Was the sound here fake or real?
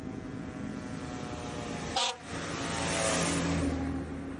real